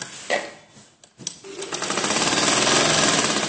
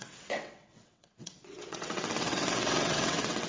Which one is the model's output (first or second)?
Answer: second